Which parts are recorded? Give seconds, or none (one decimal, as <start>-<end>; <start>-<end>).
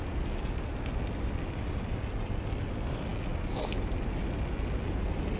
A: 0.0-5.4